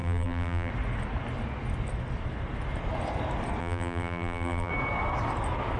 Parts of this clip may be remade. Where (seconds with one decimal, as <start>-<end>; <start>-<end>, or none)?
0.0-0.7; 3.6-4.7